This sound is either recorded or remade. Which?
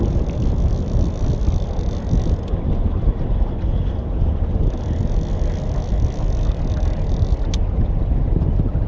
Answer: recorded